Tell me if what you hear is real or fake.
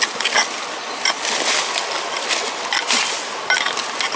real